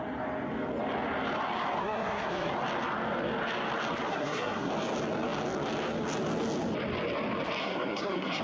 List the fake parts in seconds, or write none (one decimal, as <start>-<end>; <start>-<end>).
1.8-2.5; 4.1-4.7; 7.6-8.4